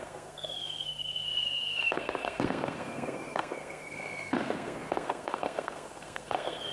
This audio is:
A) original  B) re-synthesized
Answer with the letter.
B